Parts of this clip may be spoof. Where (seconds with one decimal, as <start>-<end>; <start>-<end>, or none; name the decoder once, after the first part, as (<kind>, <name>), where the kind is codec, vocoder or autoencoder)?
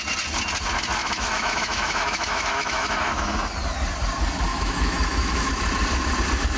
1.0-3.3 (autoencoder, DAC-VAE); 4.5-5.5